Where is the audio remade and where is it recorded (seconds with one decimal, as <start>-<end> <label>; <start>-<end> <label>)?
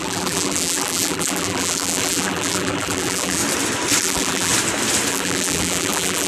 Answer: 0.0-3.4 remade; 3.4-4.0 recorded; 4.0-4.5 remade; 4.5-5.1 recorded; 5.1-6.3 remade